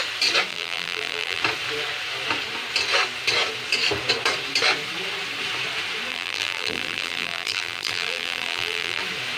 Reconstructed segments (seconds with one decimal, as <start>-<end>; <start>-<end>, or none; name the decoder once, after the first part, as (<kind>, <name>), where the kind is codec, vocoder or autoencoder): 0.5-1.4 (vocoder, BigVGAN v2); 6.1-9.0